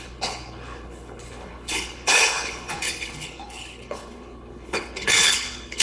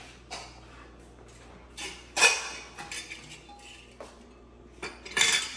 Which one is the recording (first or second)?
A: second